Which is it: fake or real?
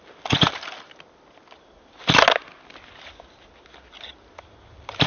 real